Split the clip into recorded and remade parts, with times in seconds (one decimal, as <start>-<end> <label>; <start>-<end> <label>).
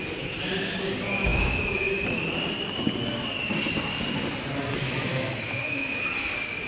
0.0-5.1 recorded; 5.1-6.1 remade; 6.1-6.7 recorded